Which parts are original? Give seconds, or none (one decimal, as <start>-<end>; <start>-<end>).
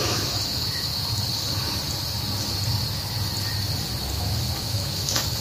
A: 0.9-4.1